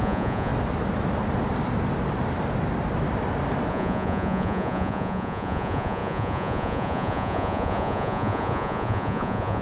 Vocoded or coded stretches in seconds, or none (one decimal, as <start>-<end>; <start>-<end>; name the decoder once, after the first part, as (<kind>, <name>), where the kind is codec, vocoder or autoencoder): 0.0-0.5 (vocoder, Vocos); 3.7-9.6